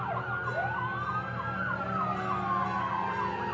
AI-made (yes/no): no